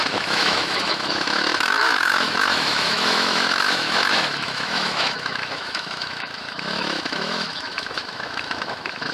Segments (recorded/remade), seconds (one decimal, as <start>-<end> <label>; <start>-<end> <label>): 0.0-9.1 remade